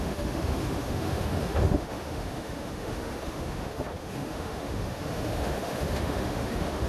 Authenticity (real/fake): fake